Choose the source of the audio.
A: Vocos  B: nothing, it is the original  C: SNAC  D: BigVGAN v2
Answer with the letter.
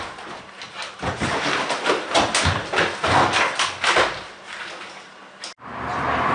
B